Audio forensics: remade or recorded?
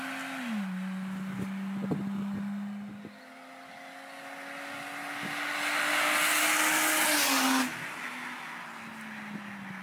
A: recorded